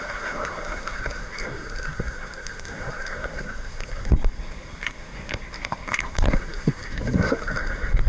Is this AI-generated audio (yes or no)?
yes